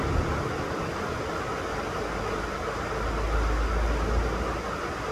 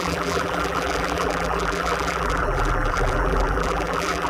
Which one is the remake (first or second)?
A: second